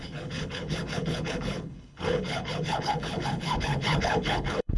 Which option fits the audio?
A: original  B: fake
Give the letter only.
B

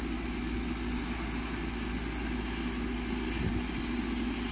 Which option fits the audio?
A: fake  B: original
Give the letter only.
B